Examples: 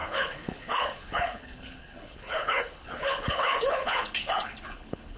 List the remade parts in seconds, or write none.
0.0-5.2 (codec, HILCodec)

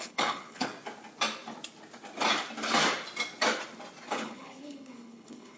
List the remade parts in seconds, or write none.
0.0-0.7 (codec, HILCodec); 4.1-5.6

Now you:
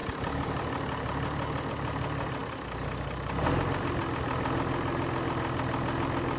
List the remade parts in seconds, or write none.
none

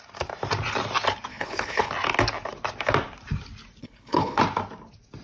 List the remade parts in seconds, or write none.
1.3-1.9 (codec, HILCodec); 3.8-4.4

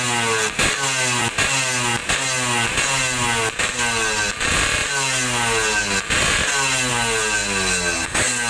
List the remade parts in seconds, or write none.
none

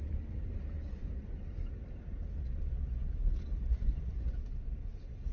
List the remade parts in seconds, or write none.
none

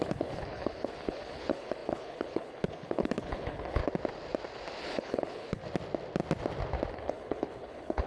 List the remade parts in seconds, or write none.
0.0-3.8 (codec, HILCodec); 4.8-5.6; 6.9-8.1